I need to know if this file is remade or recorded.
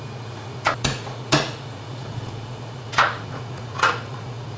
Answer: remade